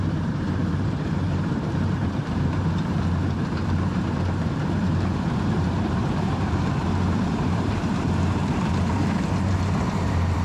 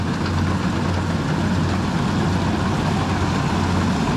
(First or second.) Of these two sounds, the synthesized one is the first